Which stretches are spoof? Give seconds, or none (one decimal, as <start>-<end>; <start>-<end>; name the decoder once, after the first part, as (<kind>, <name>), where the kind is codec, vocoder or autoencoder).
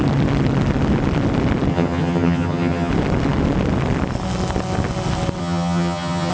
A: 1.7-2.9 (vocoder, HiFi-GAN); 5.4-6.3